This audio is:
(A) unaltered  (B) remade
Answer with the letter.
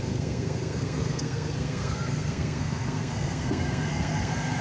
B